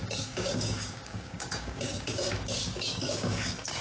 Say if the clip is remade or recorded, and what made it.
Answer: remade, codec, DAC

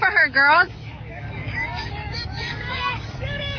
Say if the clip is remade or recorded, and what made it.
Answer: remade, codec, DAC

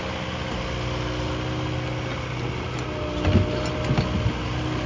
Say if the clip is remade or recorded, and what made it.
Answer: recorded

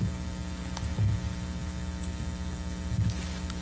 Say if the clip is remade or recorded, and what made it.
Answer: recorded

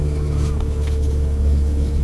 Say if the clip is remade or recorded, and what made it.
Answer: remade, codec, DAC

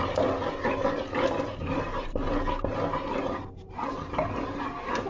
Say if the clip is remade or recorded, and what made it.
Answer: recorded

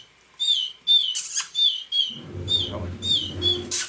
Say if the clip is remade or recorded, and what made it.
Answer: recorded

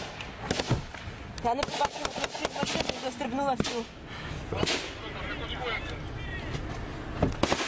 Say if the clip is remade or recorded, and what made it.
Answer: recorded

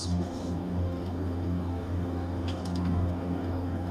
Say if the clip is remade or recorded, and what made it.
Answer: remade, codec, DAC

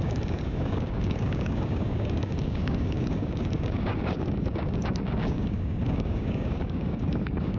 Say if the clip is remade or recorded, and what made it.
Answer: remade, codec, DAC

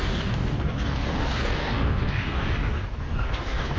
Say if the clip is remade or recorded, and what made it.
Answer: remade, codec, DAC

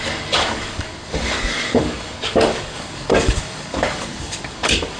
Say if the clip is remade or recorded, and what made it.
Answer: remade, codec, DAC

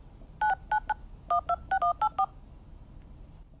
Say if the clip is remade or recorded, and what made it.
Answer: recorded